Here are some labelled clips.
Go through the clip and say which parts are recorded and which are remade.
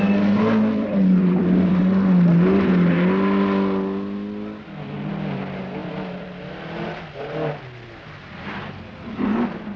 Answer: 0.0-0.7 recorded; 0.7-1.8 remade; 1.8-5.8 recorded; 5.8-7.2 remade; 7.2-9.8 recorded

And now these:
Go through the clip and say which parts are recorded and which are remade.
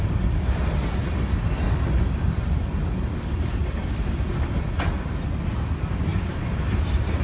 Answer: 0.0-6.1 recorded; 6.1-7.2 remade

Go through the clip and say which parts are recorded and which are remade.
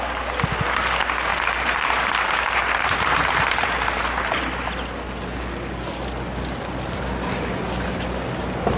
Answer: 0.0-1.3 recorded; 1.3-4.4 remade; 4.4-8.8 recorded